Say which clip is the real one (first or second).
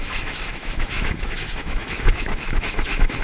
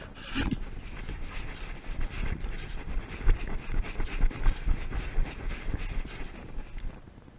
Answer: second